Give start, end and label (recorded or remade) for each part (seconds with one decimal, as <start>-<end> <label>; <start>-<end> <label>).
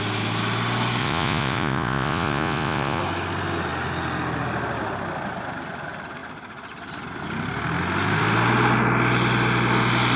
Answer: 0.0-1.0 recorded; 1.0-3.0 remade; 3.0-10.2 recorded